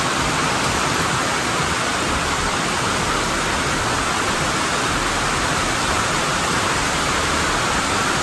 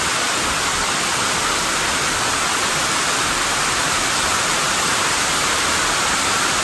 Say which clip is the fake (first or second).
second